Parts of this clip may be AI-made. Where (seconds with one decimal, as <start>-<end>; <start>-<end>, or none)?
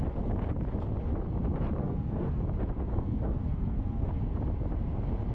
1.8-2.4; 2.9-4.1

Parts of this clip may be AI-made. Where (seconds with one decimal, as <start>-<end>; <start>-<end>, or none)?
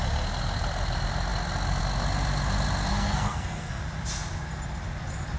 2.9-3.8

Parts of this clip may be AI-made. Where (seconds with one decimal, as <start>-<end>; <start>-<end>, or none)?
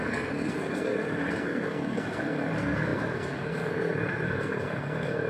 0.0-5.3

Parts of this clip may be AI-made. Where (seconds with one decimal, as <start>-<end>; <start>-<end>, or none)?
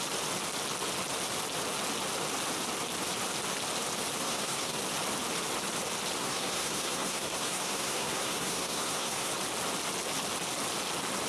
4.2-4.8; 6.2-9.3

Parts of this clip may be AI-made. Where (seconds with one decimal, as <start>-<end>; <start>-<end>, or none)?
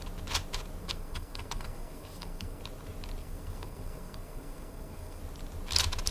0.8-2.6; 3.2-5.2